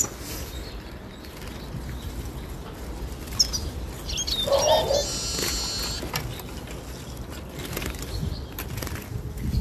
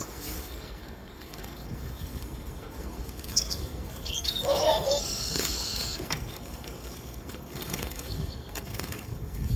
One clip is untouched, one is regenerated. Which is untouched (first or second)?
first